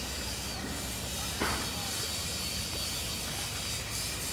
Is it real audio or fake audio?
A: real